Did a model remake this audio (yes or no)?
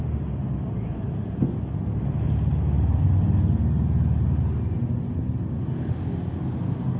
no